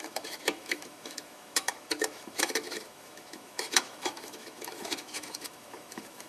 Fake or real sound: fake